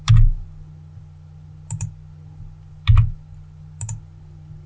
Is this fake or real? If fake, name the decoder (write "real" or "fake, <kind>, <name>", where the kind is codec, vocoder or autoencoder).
real